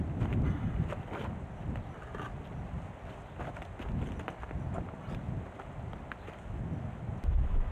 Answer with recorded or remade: recorded